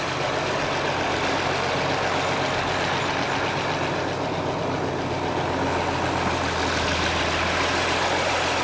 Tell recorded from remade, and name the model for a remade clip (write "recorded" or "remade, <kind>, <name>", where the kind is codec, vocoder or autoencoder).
recorded